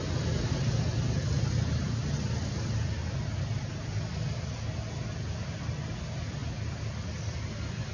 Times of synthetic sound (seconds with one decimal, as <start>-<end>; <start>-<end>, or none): none